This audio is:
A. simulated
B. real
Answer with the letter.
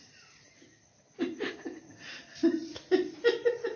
B